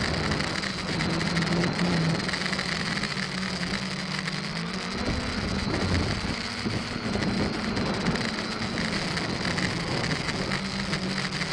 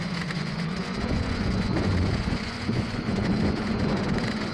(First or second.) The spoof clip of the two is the second